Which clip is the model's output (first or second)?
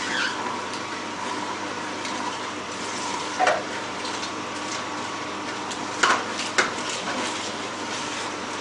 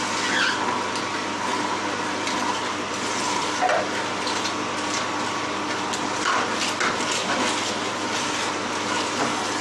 first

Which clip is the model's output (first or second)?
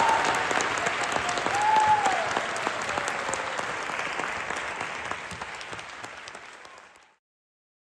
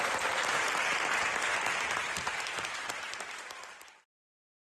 second